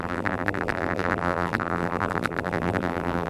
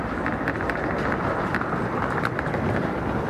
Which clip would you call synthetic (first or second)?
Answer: first